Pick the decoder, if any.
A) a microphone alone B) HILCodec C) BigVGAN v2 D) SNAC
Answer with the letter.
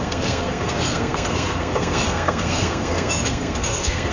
D